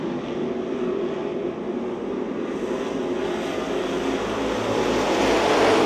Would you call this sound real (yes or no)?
yes